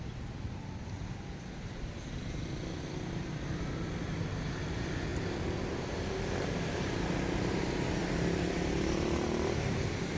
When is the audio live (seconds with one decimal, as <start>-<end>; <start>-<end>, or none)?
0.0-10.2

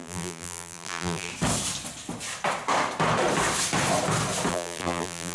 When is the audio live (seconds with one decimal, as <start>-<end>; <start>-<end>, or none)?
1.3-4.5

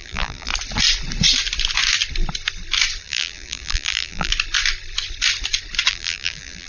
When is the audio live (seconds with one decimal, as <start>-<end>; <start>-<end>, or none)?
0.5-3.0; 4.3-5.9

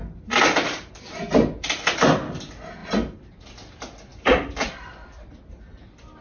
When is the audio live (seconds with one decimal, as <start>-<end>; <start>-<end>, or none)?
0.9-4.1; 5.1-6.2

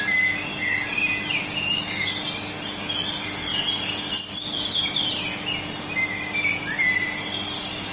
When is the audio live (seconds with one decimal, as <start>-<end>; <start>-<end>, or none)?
0.0-7.9